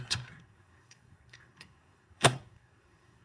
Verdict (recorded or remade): remade